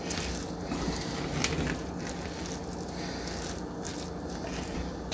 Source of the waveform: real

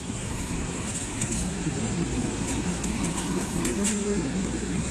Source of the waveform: fake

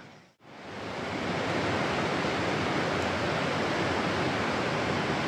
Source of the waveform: real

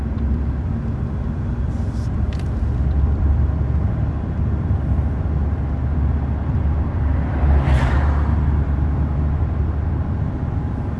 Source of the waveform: fake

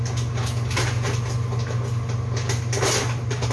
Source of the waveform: real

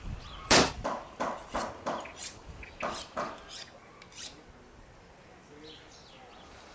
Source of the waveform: real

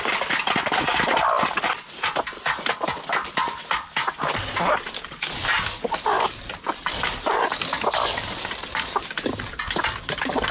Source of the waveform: real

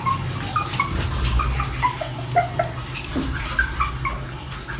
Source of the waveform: real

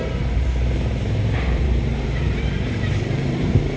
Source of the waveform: fake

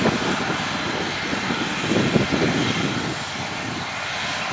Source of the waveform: fake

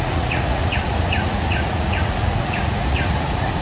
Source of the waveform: fake